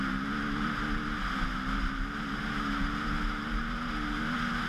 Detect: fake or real real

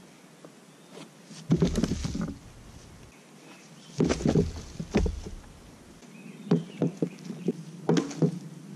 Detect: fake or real real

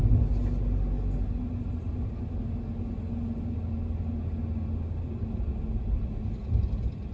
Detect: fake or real real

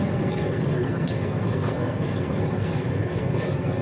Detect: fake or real fake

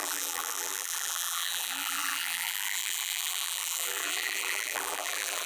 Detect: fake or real fake